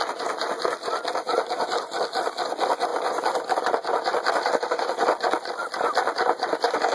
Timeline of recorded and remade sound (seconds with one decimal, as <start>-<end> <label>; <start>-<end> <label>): 0.0-6.9 recorded